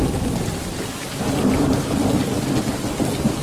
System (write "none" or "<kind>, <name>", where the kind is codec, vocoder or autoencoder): none